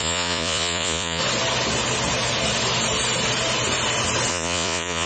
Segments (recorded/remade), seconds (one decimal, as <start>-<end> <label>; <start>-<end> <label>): 0.0-1.2 remade; 1.2-4.3 recorded; 4.3-5.1 remade